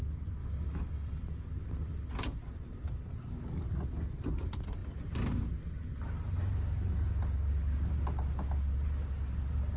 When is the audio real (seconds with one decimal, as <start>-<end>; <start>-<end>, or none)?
0.0-0.4; 1.2-9.8